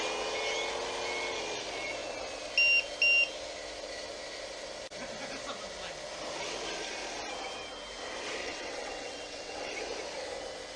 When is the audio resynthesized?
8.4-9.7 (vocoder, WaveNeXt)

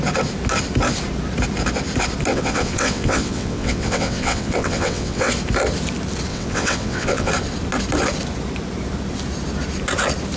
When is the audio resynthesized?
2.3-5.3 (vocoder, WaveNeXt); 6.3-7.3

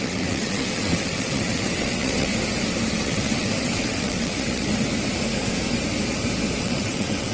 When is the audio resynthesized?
0.0-2.3 (vocoder, WaveNeXt); 2.9-4.7; 6.6-7.3